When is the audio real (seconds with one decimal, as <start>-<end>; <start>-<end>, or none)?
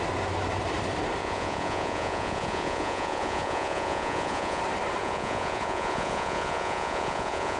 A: 0.0-1.2; 4.6-5.0